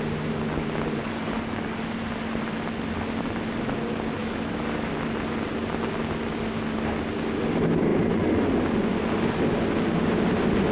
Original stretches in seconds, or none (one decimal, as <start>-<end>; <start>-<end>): 0.0-1.0; 1.8-4.2; 4.9-10.7